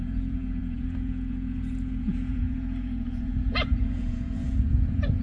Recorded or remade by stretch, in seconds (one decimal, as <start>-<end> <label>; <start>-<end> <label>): 0.0-5.2 remade